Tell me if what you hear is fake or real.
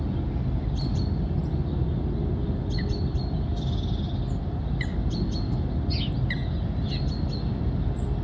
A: real